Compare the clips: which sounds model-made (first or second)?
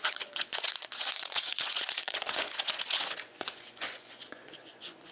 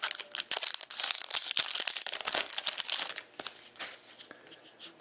first